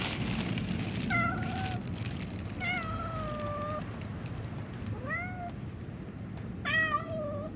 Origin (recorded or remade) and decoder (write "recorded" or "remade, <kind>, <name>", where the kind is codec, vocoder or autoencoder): recorded